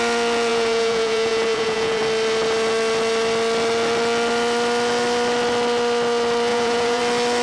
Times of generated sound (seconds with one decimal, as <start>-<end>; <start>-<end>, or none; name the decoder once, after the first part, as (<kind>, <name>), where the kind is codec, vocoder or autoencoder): 0.5-2.0 (vocoder, Vocos); 6.5-7.0